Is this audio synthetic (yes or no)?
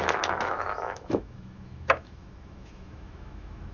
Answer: yes